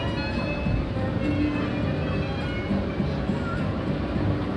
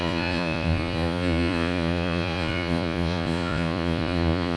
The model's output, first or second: second